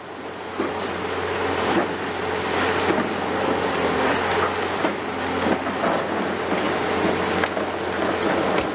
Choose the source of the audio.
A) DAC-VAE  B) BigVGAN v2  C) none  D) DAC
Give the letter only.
C